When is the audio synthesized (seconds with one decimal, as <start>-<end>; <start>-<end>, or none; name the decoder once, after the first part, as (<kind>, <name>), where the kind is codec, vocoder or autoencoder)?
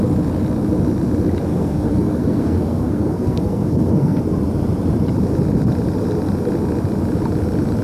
1.5-4.2 (codec, SNAC)